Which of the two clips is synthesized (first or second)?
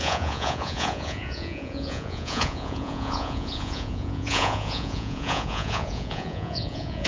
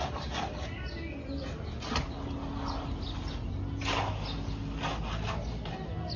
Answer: first